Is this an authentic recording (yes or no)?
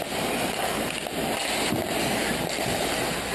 yes